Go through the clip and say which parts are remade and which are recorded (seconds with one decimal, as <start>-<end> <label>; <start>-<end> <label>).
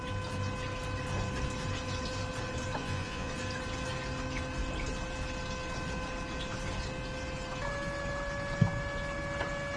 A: 0.0-2.8 recorded; 2.8-3.3 remade; 3.3-9.8 recorded